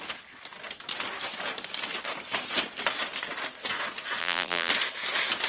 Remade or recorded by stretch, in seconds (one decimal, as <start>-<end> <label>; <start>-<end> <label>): 0.0-4.2 recorded; 4.2-4.7 remade; 4.7-5.5 recorded